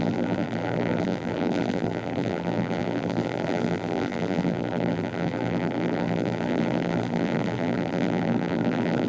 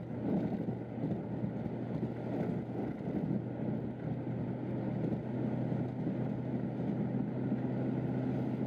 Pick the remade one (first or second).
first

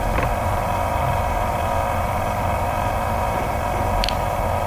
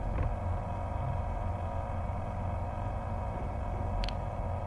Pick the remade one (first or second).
first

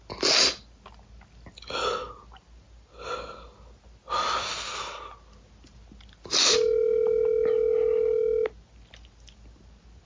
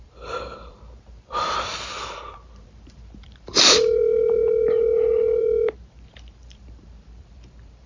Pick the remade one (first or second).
second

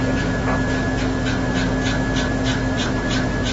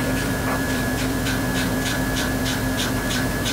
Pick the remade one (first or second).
second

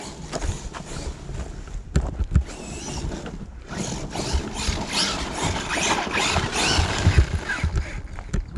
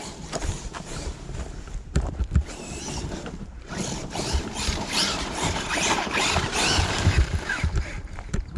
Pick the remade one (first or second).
second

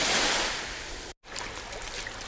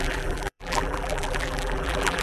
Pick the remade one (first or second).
second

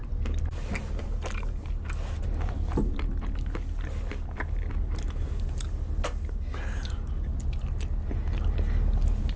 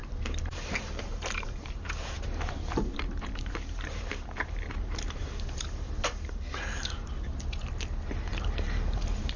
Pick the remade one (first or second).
second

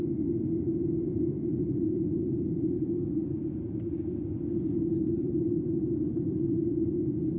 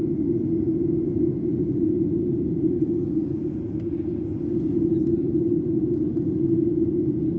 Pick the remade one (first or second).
first